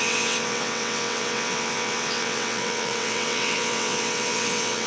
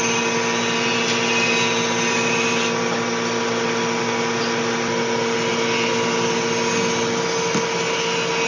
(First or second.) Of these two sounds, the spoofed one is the first